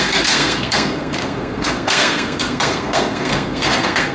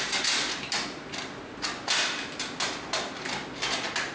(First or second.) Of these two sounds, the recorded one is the second